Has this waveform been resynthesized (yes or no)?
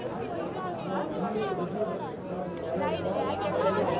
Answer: no